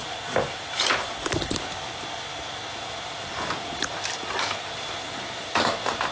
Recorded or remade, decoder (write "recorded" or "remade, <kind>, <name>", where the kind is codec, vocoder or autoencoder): remade, vocoder, BigVGAN v2